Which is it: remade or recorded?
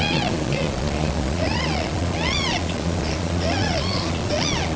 remade